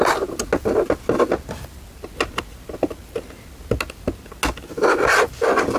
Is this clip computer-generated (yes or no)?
no